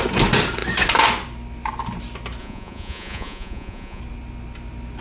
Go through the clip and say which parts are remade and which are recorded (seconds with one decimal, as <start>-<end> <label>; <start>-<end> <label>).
0.0-2.4 recorded; 2.4-4.0 remade; 4.0-5.0 recorded